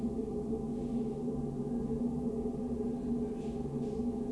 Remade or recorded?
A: recorded